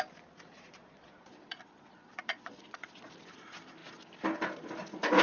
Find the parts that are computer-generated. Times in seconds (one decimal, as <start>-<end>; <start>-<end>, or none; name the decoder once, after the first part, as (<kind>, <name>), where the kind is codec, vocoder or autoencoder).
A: 0.5-3.1 (vocoder, Vocos)